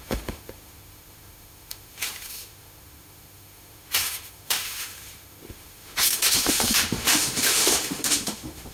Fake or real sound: fake